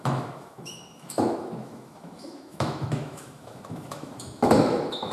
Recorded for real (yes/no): no